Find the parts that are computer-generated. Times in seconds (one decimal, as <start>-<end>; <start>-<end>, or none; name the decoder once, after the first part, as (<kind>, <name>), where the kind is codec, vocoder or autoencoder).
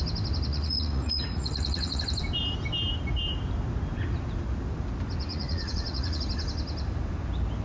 0.5-2.0 (vocoder, Vocos); 5.3-6.2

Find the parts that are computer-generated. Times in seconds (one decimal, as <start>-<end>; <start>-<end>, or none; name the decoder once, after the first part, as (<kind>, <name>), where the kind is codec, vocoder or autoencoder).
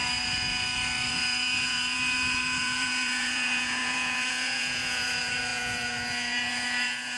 1.1-7.2 (vocoder, Vocos)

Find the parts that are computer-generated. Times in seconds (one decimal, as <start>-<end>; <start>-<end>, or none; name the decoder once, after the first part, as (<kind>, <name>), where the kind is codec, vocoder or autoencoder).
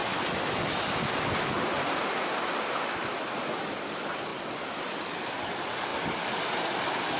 0.0-3.2 (vocoder, BigVGAN v2); 4.3-5.2; 5.9-7.2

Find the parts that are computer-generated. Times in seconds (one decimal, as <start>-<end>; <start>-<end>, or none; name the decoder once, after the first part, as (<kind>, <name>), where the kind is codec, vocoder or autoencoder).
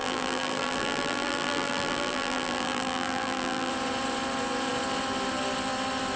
0.0-3.7 (vocoder, BigVGAN v2)